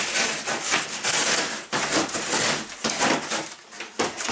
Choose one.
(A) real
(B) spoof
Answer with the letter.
A